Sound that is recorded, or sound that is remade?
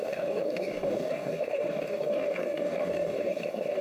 remade